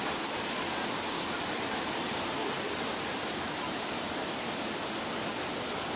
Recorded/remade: recorded